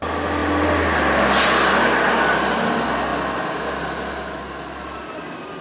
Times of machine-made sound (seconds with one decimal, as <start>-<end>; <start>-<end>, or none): none